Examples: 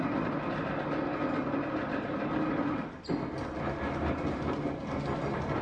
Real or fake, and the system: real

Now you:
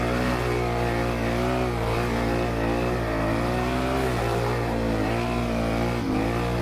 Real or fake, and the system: real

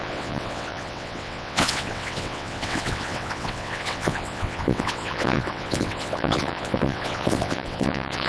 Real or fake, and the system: fake, vocoder, WaveNeXt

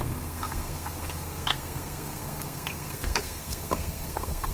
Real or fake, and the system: fake, codec, SNAC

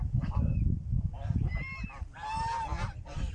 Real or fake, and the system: real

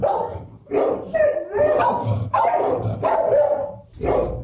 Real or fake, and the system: fake, vocoder, BigVGAN v2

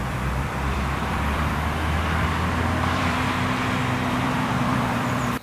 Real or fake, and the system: fake, vocoder, BigVGAN v2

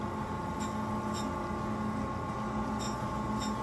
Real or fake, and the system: real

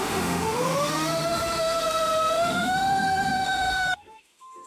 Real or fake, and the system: fake, autoencoder, DAC-VAE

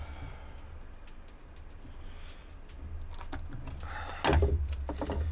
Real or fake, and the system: real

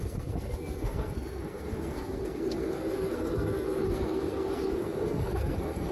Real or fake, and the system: fake, codec, SNAC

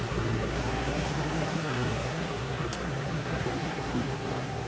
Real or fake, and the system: fake, codec, SNAC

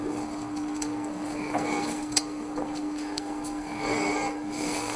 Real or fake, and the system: fake, codec, SNAC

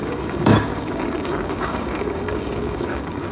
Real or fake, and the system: fake, codec, DAC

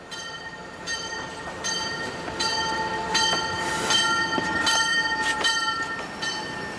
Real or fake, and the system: fake, vocoder, BigVGAN v2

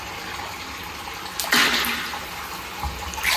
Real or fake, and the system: real